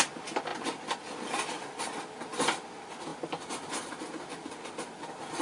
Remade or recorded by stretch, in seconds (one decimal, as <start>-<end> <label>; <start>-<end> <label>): 0.0-5.4 recorded